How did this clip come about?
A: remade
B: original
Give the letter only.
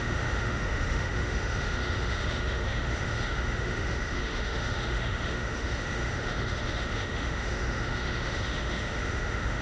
A